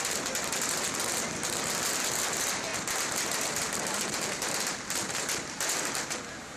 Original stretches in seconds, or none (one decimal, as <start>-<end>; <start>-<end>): 0.0-6.6